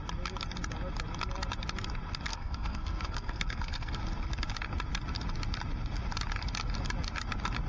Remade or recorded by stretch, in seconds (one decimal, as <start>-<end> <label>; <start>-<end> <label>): 0.0-2.3 recorded; 2.3-4.0 remade; 4.0-7.7 recorded